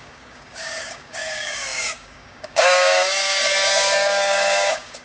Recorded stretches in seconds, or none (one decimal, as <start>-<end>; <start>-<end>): none